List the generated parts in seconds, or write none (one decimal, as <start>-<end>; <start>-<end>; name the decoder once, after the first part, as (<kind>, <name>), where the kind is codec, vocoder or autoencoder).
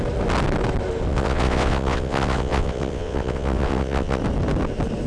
1.1-4.2 (vocoder, WaveNeXt)